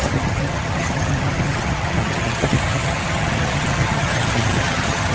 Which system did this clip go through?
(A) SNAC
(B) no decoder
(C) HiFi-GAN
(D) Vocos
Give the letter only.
C